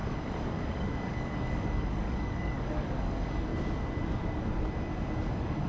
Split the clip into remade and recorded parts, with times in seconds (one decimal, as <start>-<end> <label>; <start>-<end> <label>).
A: 0.0-3.5 remade; 3.5-5.3 recorded; 5.3-5.7 remade